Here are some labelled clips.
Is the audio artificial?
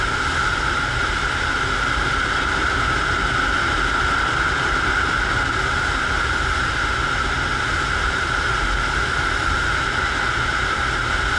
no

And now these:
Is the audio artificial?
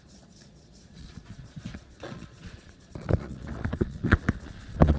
yes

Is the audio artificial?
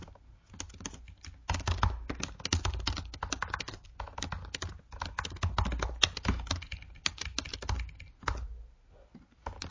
no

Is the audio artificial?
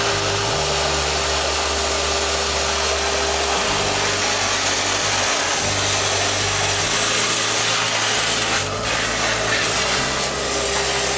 no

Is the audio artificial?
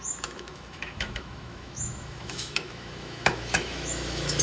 yes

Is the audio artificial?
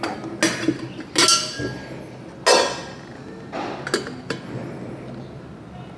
no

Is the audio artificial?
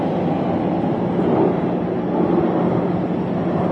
no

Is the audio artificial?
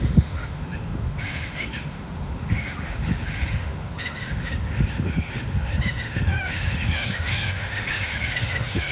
yes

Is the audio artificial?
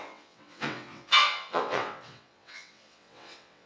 yes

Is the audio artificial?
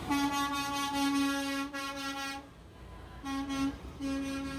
no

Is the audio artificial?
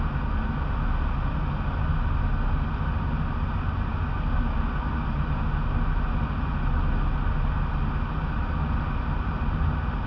no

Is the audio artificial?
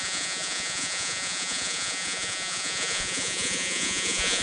yes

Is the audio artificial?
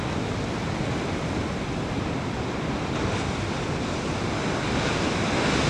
no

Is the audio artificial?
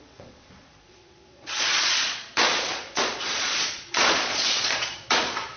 yes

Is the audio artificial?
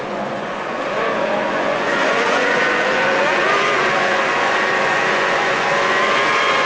yes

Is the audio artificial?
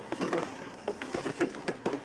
yes